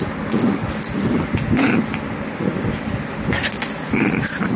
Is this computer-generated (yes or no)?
no